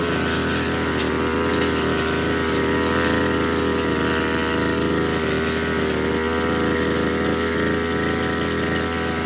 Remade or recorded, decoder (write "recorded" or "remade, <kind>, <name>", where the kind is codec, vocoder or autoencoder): recorded